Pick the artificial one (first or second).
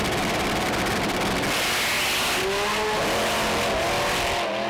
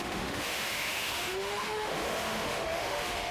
second